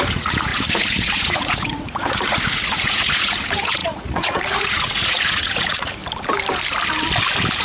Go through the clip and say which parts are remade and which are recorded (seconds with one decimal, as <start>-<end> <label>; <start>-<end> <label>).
0.0-6.0 remade; 6.0-7.6 recorded